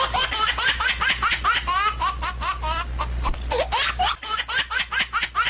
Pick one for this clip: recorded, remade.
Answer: recorded